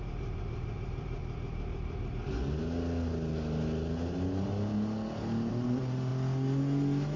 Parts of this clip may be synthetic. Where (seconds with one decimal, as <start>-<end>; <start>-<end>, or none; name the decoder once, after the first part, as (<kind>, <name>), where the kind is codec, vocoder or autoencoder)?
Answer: 0.0-1.2 (vocoder, BigVGAN v2); 5.5-6.1